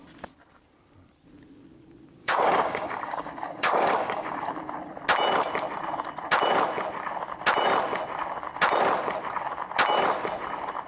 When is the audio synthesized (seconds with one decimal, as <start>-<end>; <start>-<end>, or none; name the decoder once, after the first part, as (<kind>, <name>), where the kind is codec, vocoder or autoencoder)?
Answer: 2.2-4.5 (codec, DAC)